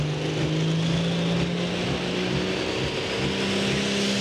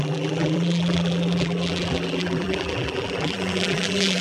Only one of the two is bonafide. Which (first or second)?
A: first